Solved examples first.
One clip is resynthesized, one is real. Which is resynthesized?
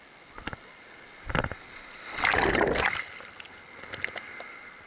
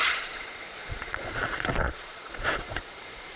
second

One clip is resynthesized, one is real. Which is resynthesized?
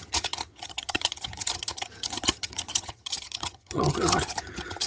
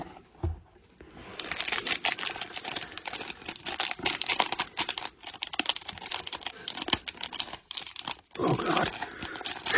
first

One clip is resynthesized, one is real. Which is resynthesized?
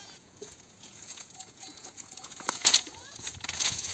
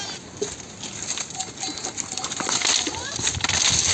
first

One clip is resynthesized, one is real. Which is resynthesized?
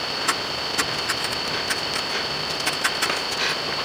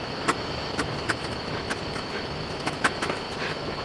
second